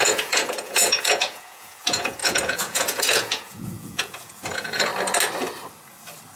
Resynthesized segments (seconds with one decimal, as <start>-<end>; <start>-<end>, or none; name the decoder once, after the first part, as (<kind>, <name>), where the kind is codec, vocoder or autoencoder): 0.0-4.9 (vocoder, Vocos)